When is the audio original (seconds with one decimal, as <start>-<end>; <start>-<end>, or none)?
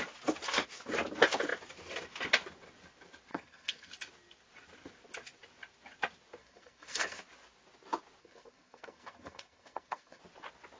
0.0-3.3; 3.9-6.4; 7.2-8.2; 10.2-10.8